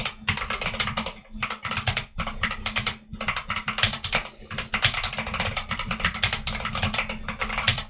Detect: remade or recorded recorded